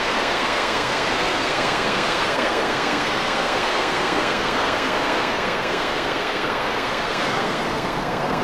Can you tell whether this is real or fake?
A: fake